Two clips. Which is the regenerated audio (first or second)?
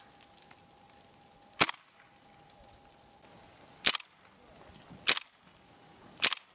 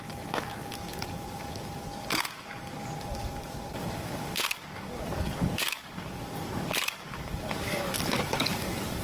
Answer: second